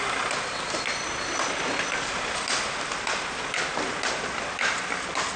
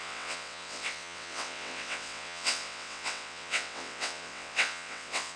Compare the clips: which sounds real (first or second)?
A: first